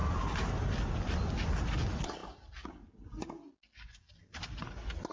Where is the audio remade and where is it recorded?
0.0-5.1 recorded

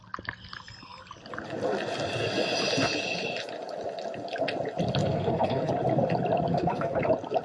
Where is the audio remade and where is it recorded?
0.0-5.0 recorded; 5.0-5.7 remade; 5.7-6.5 recorded; 6.5-7.0 remade; 7.0-7.4 recorded

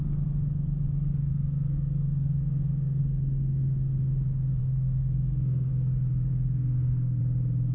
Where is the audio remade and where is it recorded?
0.0-1.3 recorded; 1.3-3.0 remade; 3.0-4.6 recorded; 4.6-5.7 remade; 5.7-6.3 recorded; 6.3-7.2 remade; 7.2-7.7 recorded

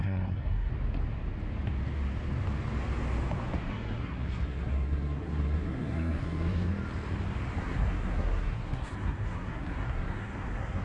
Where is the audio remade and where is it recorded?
0.0-0.7 remade; 0.7-3.7 recorded; 3.7-6.7 remade; 6.7-7.6 recorded; 7.6-10.8 remade

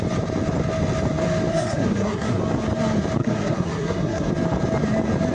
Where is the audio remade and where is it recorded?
0.0-1.5 recorded; 1.5-2.4 remade; 2.4-3.2 recorded; 3.2-4.3 remade; 4.3-5.3 recorded

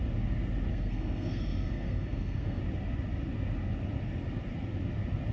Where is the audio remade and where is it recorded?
0.0-0.7 recorded; 0.7-2.6 remade; 2.6-5.3 recorded

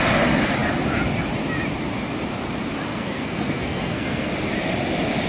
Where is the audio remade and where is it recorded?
0.0-2.9 recorded; 2.9-4.3 remade; 4.3-5.3 recorded

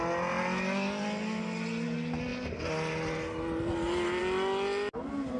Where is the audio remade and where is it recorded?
0.0-5.4 recorded